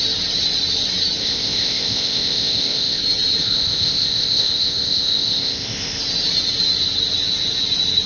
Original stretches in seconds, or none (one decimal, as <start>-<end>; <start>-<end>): 0.0-1.2; 3.0-3.4; 6.0-8.1